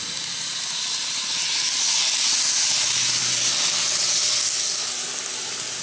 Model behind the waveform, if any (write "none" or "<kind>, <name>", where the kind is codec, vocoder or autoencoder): none